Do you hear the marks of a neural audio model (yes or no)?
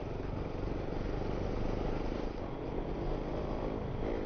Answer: no